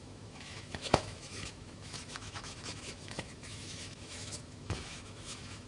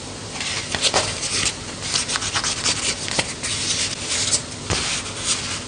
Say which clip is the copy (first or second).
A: first